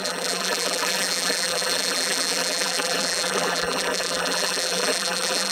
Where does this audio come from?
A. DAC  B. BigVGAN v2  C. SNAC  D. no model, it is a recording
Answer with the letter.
B